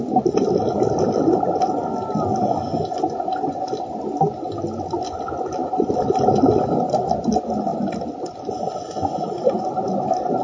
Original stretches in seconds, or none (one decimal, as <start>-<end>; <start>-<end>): 0.0-10.4